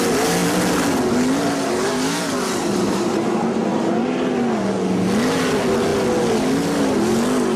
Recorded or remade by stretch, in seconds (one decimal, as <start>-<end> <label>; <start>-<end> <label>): 0.0-7.6 recorded

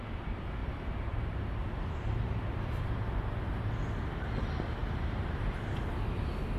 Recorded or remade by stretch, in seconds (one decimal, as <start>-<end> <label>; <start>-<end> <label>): 0.0-0.6 recorded; 0.6-3.6 remade; 3.6-4.8 recorded; 4.8-5.8 remade; 5.8-6.6 recorded

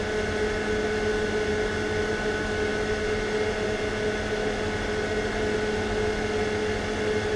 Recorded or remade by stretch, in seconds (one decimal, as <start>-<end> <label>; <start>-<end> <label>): 0.0-7.4 recorded

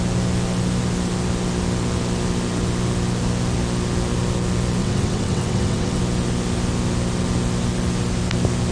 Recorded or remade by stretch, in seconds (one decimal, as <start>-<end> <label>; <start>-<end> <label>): 0.0-4.8 recorded; 4.8-6.0 remade; 6.0-8.7 recorded

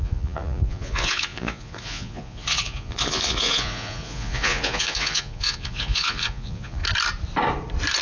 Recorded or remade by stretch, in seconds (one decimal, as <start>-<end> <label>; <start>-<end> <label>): 0.0-6.8 remade; 6.8-8.0 recorded

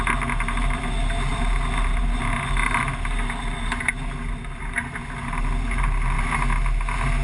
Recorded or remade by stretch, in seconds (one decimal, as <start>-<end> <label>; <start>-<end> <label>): 0.0-7.2 recorded

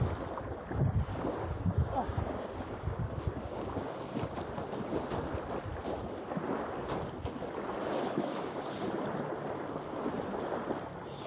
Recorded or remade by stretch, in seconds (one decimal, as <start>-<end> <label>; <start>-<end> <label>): 0.0-1.1 recorded; 1.1-4.0 remade; 4.0-7.8 recorded; 7.8-8.6 remade; 8.6-11.3 recorded

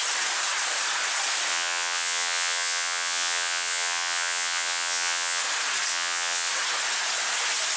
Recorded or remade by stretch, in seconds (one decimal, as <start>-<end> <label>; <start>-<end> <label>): 0.0-1.5 recorded; 1.5-5.4 remade; 5.4-5.9 recorded; 5.9-6.5 remade; 6.5-7.8 recorded